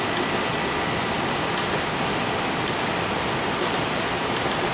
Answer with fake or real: real